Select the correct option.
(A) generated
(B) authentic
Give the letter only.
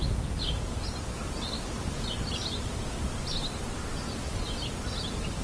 B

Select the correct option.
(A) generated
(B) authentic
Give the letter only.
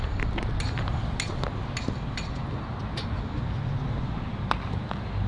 B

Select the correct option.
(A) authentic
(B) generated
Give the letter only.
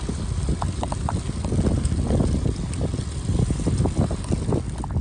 A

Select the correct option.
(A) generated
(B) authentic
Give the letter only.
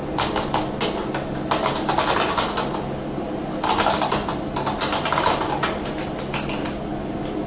B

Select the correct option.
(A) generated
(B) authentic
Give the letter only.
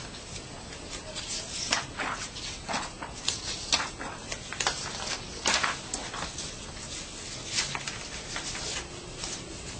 B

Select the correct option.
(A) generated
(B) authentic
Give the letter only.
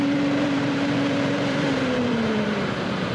A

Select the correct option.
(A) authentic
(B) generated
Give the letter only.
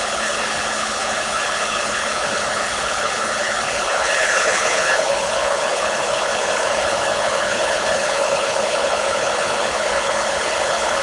B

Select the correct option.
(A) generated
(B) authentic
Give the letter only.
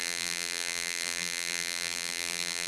A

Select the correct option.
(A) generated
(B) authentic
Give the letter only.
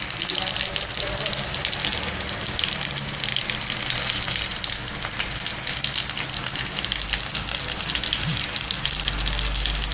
B